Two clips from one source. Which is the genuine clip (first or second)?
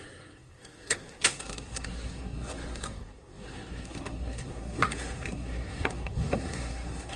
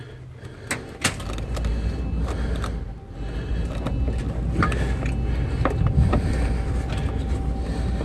second